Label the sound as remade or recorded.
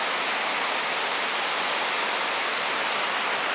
recorded